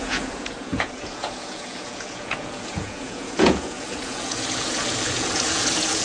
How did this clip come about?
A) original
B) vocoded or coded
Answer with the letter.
B